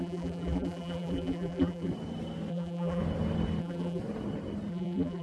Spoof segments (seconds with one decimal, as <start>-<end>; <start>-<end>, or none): 0.0-1.9; 2.5-3.0; 3.6-4.0; 4.7-5.2